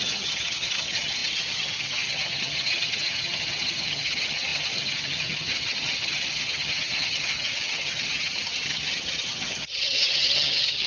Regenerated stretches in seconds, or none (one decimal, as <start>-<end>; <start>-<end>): 0.0-10.9